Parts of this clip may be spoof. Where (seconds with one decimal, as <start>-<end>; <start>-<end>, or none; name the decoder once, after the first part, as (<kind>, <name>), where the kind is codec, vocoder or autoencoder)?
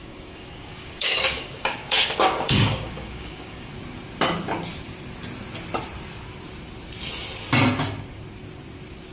0.0-3.7 (codec, DAC)